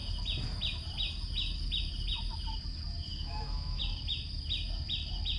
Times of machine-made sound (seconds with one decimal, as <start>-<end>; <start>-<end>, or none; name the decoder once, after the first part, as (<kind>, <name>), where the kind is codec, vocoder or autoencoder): 3.1-3.8 (autoencoder, DAC-VAE)